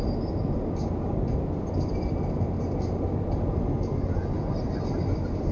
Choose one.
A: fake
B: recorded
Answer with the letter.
B